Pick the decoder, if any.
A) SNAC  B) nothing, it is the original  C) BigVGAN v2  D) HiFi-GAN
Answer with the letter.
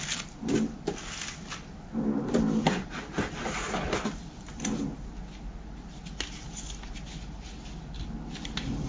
B